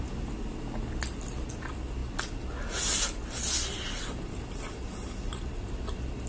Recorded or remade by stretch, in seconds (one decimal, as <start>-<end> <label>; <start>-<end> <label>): 0.0-6.3 recorded